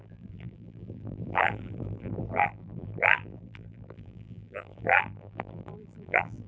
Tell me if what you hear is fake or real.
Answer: fake